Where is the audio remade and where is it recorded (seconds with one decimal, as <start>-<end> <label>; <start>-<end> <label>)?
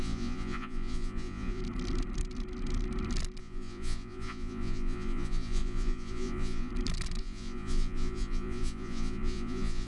0.0-1.6 remade; 1.6-3.4 recorded; 3.4-6.7 remade; 6.7-7.2 recorded; 7.2-9.9 remade